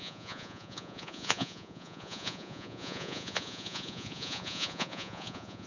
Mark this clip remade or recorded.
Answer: remade